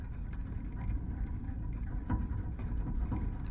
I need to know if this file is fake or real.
real